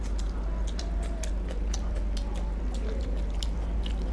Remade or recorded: recorded